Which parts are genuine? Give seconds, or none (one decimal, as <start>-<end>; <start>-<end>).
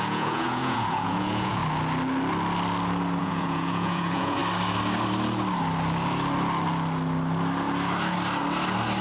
1.6-3.2; 4.4-9.0